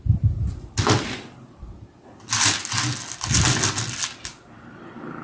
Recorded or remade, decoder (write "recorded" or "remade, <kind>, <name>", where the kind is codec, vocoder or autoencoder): recorded